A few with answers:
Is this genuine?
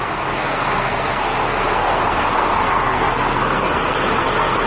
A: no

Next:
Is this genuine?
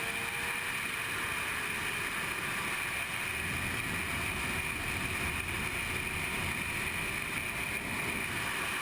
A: yes